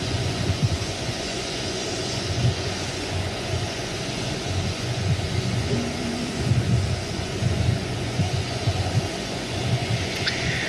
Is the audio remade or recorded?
remade